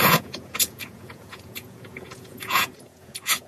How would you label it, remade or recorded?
remade